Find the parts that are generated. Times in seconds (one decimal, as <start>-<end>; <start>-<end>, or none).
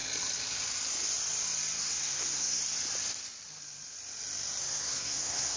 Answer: 1.8-2.6; 4.6-5.6